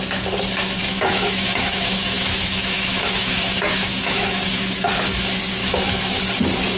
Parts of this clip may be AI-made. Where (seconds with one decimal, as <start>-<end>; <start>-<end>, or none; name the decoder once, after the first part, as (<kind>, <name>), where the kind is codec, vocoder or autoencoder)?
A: 0.8-4.9 (autoencoder, DAC-VAE); 5.6-6.2